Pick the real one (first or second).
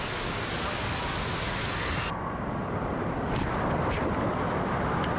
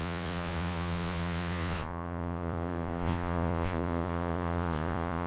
first